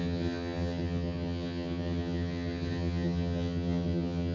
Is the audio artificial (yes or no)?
yes